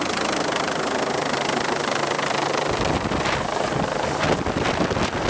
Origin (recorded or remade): recorded